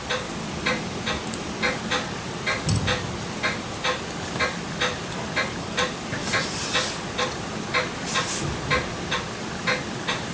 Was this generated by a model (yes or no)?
no